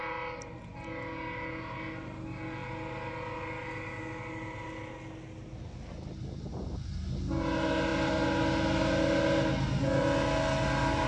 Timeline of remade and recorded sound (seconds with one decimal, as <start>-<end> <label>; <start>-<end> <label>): 0.0-11.1 recorded